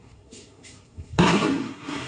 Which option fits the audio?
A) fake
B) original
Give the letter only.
A